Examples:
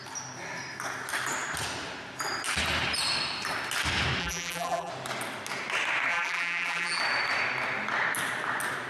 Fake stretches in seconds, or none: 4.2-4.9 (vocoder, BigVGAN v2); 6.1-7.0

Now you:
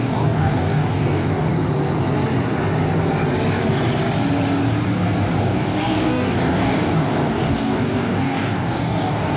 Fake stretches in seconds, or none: 0.0-1.5 (codec, DAC); 5.4-9.4